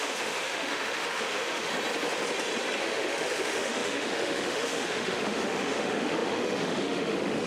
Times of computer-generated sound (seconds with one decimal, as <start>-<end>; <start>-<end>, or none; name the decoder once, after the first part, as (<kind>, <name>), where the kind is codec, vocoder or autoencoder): 0.0-1.7 (autoencoder, DAC-VAE); 2.8-7.5